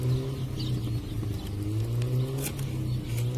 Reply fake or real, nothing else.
real